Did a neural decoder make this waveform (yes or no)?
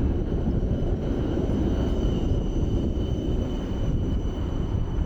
yes